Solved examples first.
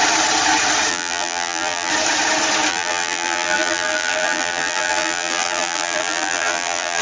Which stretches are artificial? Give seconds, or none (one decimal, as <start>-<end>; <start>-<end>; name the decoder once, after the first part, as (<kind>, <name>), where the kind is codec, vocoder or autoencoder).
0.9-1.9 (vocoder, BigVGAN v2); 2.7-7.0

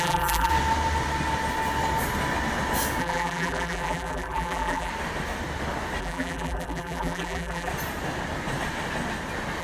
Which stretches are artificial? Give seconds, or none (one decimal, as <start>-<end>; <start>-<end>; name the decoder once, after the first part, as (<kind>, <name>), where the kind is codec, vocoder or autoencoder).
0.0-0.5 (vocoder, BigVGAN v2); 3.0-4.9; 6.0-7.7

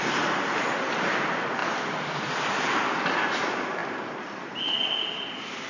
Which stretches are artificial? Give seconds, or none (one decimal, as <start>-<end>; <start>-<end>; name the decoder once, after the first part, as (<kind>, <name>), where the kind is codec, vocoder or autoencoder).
1.6-2.8 (vocoder, BigVGAN v2); 3.8-5.0